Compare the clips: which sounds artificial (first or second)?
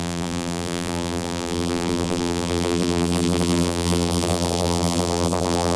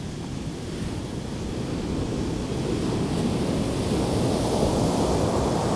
first